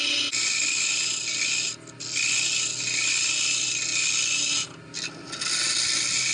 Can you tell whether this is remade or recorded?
recorded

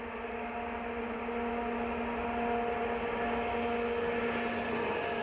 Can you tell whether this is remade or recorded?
recorded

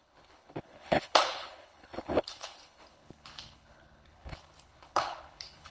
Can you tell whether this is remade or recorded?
remade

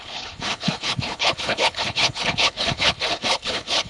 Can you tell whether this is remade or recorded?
remade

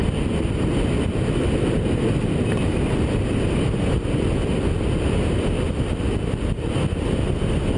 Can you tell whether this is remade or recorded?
recorded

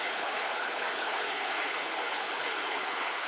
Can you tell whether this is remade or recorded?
remade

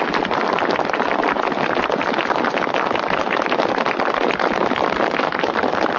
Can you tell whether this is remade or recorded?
recorded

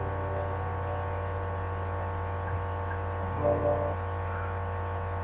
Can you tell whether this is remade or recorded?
recorded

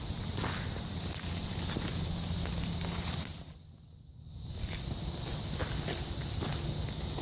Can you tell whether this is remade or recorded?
recorded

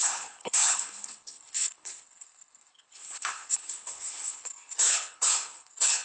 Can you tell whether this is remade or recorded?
remade